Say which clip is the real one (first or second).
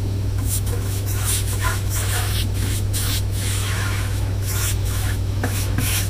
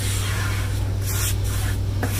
second